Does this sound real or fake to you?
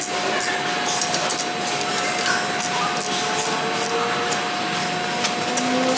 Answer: real